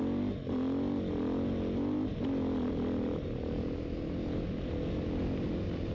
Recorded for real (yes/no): yes